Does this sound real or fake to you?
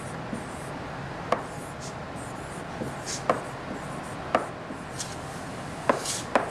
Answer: real